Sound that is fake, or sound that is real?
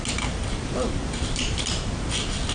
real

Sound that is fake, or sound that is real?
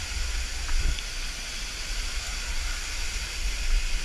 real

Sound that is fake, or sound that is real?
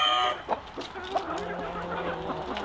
real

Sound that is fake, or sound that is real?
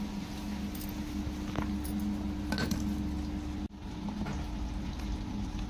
real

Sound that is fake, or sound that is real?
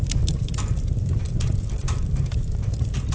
fake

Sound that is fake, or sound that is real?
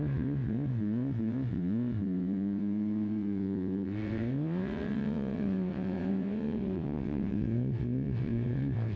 fake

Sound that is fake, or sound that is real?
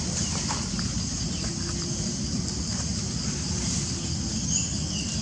real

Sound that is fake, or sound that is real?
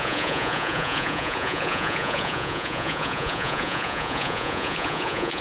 fake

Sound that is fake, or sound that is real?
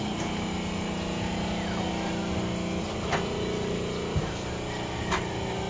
real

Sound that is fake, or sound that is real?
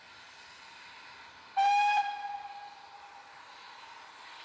real